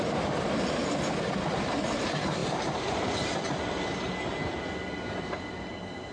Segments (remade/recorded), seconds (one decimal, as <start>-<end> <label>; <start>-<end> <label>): 0.0-6.1 recorded